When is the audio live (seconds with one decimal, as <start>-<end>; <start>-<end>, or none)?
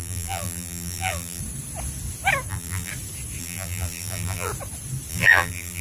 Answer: 1.4-2.5; 2.9-3.4; 4.5-5.1